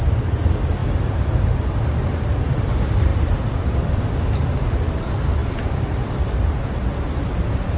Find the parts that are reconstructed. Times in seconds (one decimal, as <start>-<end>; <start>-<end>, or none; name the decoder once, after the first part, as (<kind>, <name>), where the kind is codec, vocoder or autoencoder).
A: 3.1-3.9 (vocoder, BigVGAN v2); 5.4-6.5